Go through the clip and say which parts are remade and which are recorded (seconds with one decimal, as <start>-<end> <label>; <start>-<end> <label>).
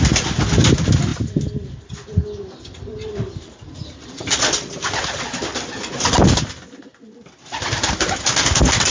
0.0-8.9 recorded